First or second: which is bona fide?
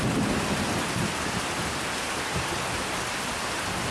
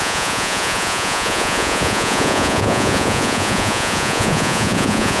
first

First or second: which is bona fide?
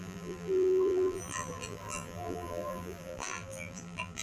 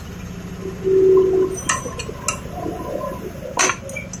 second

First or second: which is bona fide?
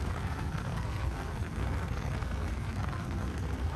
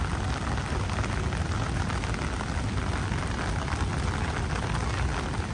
second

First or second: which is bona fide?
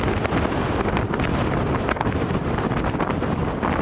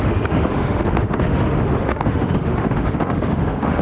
first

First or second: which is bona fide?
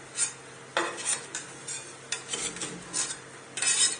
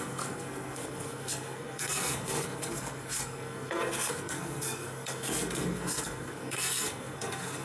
first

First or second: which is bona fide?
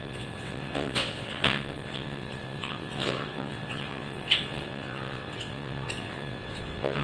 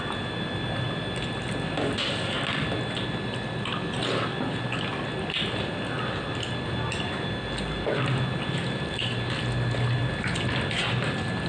second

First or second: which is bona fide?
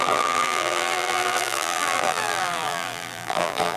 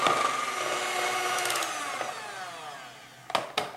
second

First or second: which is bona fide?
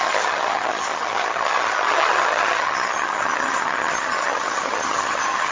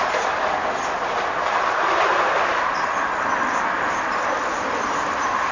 second